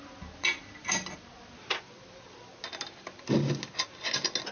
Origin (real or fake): real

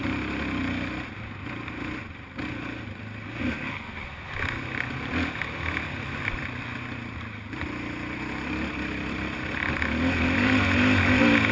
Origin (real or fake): real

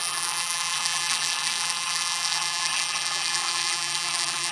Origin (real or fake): fake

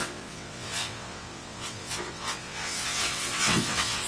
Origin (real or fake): fake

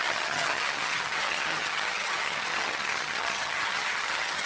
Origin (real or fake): fake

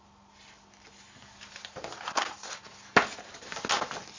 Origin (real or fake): real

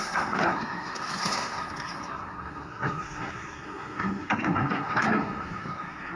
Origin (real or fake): fake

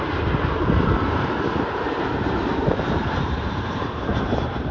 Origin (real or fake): fake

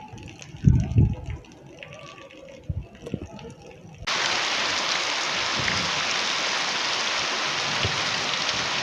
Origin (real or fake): real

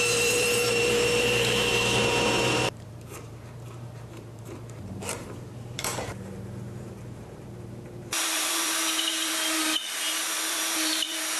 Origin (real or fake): fake